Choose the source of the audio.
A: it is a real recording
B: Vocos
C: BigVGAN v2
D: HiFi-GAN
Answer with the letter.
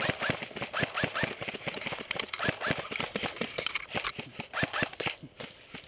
C